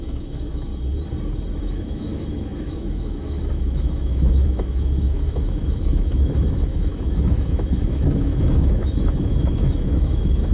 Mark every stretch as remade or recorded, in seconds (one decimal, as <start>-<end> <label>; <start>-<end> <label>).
0.0-0.7 remade; 0.7-1.6 recorded; 1.6-10.5 remade